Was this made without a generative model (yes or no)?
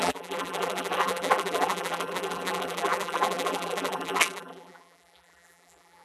no